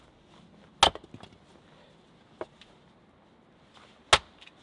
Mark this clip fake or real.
real